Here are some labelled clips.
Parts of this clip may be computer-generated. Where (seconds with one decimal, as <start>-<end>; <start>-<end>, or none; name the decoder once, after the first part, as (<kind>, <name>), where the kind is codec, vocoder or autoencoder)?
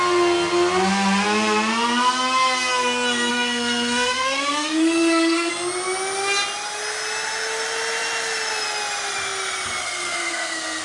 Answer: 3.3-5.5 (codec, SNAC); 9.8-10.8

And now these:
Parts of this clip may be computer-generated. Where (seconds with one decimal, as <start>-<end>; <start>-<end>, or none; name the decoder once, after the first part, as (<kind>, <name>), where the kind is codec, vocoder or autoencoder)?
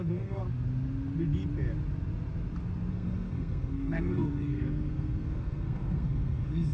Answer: 0.0-0.4 (codec, SNAC); 2.9-6.7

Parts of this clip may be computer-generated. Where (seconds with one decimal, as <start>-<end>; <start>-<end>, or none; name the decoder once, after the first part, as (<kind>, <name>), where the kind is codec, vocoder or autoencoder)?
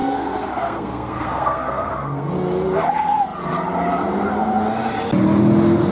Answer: 0.0-2.3 (codec, SNAC)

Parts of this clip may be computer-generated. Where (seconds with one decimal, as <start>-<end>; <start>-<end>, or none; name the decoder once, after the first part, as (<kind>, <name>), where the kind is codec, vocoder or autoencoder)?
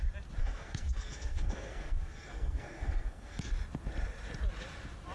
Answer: 0.4-3.5 (codec, SNAC)